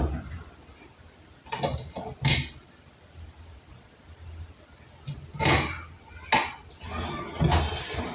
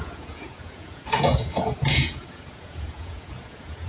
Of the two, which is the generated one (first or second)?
second